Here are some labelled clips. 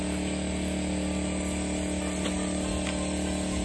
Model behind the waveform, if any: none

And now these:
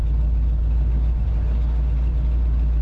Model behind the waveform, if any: none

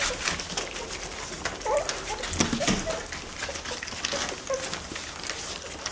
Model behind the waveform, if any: none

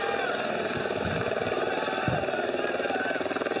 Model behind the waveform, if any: none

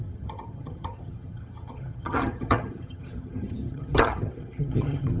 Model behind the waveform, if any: vocoder, HiFi-GAN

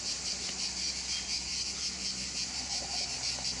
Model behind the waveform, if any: none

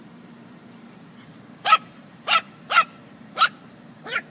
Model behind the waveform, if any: vocoder, BigVGAN v2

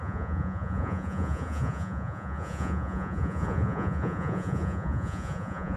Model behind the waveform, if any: vocoder, Vocos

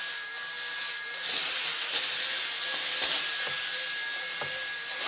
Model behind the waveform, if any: none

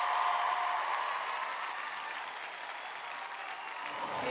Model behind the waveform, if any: none